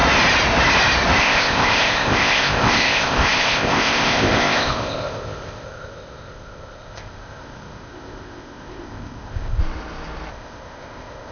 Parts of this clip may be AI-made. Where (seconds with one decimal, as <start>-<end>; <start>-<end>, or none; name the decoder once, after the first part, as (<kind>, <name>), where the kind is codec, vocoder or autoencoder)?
1.2-9.6 (codec, ZipCodec); 10.3-11.3